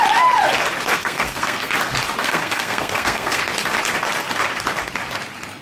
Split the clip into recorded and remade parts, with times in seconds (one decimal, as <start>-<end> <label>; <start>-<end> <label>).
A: 0.0-0.9 recorded; 0.9-1.7 remade; 1.7-2.2 recorded; 2.2-3.4 remade; 3.4-5.6 recorded